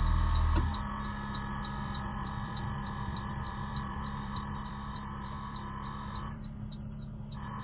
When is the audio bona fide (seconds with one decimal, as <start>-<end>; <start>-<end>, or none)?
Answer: 0.0-2.1; 6.7-7.6